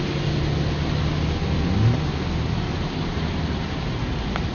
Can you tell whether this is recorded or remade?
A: recorded